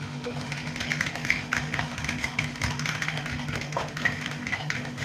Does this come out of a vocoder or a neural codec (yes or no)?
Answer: yes